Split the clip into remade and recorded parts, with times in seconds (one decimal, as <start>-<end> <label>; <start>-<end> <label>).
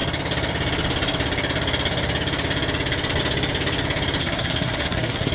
0.0-4.2 recorded; 4.2-5.3 remade